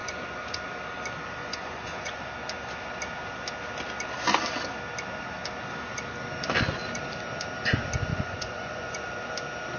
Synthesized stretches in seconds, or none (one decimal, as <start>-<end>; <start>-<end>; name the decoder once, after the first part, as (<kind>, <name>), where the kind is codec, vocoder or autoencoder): 0.0-0.6 (vocoder, Vocos); 1.4-2.2; 8.1-9.3